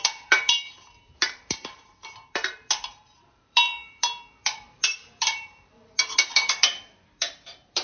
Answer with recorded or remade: remade